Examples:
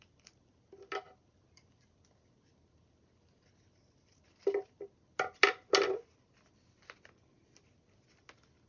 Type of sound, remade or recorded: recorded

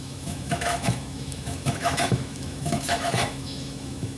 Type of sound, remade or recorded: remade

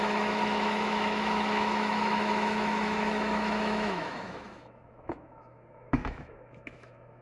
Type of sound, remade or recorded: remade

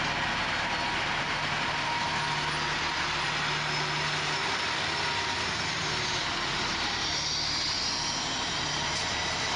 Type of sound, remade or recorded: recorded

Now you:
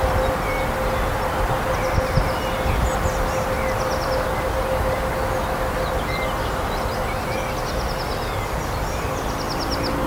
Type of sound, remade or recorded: recorded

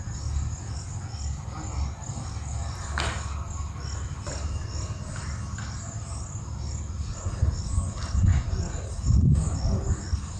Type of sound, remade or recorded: recorded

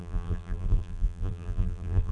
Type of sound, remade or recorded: remade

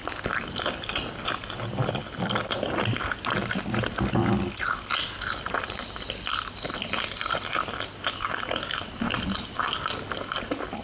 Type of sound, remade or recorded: recorded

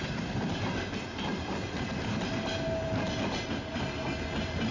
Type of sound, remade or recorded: recorded